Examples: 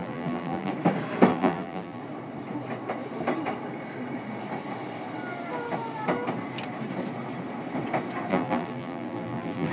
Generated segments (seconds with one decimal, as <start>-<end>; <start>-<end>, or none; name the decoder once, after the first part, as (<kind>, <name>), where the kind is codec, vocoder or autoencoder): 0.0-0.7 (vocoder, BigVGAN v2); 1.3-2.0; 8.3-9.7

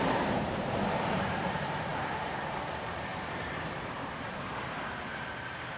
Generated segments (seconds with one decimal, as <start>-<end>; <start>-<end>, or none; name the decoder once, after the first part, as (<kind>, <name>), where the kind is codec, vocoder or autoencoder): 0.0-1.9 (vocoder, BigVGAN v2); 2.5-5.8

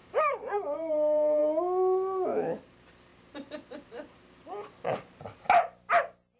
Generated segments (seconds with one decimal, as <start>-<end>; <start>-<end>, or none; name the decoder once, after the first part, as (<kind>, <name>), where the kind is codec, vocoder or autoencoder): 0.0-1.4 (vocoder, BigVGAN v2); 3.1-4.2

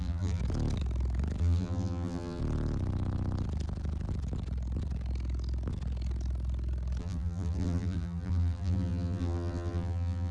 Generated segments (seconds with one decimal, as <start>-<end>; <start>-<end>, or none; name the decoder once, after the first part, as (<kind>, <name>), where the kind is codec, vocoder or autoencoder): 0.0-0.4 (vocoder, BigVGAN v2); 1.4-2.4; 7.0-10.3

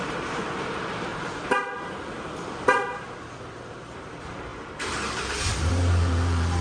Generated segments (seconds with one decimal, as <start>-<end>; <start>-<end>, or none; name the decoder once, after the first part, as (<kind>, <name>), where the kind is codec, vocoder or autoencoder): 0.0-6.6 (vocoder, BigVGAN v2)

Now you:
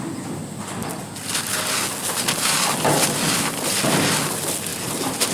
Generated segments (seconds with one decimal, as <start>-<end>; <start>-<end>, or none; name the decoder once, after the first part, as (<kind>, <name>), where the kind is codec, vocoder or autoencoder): 4.7-5.3 (vocoder, BigVGAN v2)